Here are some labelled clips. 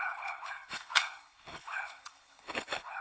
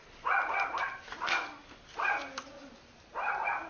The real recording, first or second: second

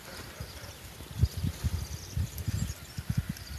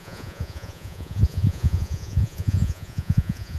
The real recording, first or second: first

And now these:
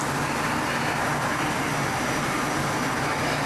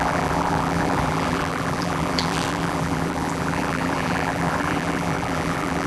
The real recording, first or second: first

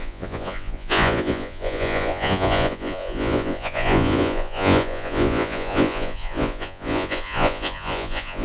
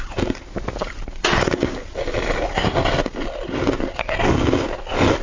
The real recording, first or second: second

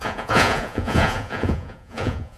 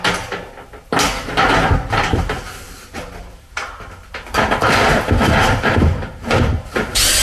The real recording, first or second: second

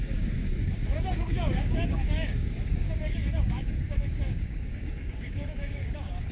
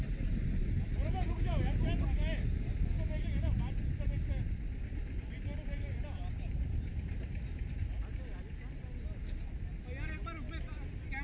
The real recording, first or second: second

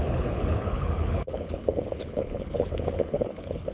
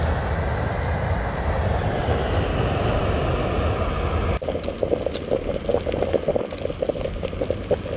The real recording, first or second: second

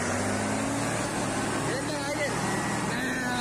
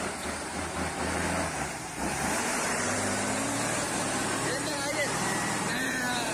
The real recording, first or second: first